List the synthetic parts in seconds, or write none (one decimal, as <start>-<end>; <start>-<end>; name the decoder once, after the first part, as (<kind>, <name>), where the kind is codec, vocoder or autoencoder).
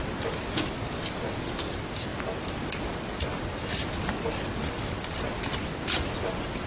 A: none